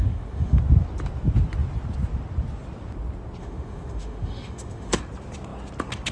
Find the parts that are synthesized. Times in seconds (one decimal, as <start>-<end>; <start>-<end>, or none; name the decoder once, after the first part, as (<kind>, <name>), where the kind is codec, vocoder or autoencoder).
0.0-0.6 (autoencoder, DAC-VAE); 3.4-5.0